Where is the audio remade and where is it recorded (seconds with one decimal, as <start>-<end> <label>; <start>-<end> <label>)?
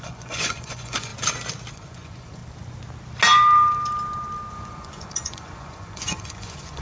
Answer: 0.0-1.1 remade; 1.1-1.7 recorded; 1.7-2.4 remade; 2.4-4.5 recorded; 4.5-6.8 remade